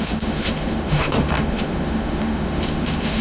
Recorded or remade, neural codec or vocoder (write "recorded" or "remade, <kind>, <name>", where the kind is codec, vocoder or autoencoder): remade, autoencoder, DAC-VAE